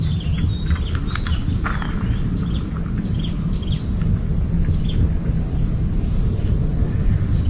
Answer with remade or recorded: recorded